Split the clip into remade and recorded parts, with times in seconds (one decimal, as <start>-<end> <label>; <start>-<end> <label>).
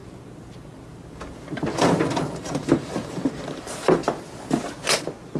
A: 0.0-1.7 recorded; 1.7-4.0 remade; 4.0-5.4 recorded